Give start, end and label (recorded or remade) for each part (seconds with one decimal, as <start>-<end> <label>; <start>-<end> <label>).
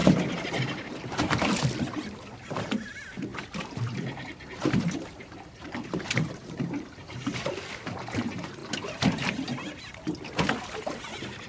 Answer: 0.0-3.3 recorded; 3.3-7.9 remade; 7.9-11.5 recorded